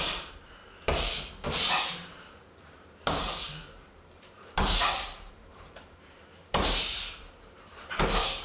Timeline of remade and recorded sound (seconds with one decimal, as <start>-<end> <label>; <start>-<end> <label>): 0.0-0.6 remade; 0.6-1.9 recorded; 1.9-8.4 remade